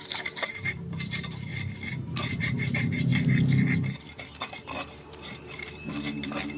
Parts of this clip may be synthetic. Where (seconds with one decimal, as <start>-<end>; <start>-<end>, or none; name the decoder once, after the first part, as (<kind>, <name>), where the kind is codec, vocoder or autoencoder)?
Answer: 0.0-1.5 (vocoder, BigVGAN v2); 2.4-3.1; 4.6-6.6